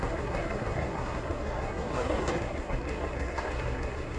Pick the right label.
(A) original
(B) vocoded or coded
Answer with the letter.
B